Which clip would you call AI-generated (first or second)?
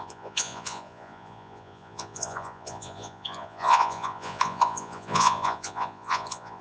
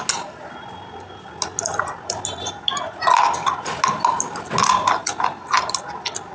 first